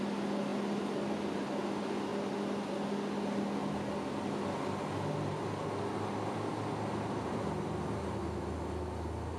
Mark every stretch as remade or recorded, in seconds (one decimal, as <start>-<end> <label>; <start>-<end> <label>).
0.0-9.4 recorded